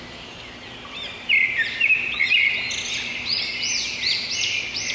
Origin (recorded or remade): recorded